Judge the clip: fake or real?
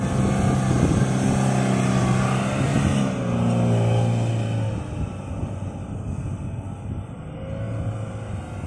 real